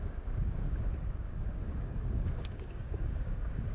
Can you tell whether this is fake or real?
fake